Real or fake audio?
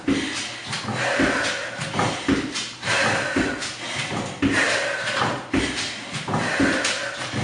real